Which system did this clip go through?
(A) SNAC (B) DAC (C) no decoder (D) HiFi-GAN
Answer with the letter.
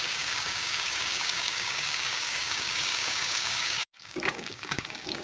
B